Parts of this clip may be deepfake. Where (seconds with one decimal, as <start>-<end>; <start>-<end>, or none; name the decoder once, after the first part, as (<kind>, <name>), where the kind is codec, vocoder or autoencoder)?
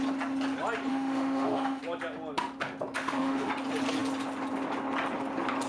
0.9-1.8 (autoencoder, DAC-VAE); 3.0-3.5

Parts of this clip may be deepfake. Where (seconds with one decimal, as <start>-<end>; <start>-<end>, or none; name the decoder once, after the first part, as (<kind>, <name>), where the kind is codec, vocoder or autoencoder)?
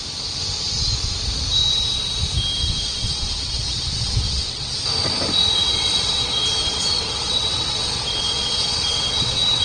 2.6-4.7 (vocoder, WaveNeXt); 5.6-9.6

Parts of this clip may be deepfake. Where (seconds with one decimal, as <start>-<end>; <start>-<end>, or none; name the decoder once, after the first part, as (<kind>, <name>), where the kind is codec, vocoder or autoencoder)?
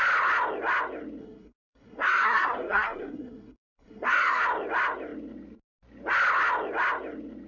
1.2-4.4 (codec, SNAC)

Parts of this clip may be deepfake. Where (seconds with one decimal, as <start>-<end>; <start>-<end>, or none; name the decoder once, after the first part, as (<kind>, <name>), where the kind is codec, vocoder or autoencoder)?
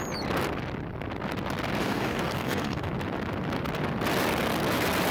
1.8-2.9 (codec, DAC)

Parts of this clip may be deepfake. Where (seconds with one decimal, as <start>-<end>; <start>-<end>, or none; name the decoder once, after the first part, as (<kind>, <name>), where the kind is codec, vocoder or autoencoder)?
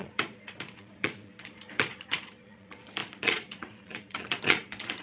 0.0-5.0 (vocoder, Vocos)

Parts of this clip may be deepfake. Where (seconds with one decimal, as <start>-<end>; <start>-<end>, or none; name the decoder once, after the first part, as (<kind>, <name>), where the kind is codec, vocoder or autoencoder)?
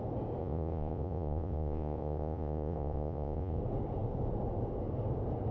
0.4-3.6 (vocoder, Vocos)